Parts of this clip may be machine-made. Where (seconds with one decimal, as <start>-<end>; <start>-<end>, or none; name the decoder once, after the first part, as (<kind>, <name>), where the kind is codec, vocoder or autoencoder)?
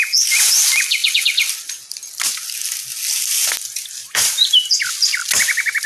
4.0-4.8 (vocoder, BigVGAN v2)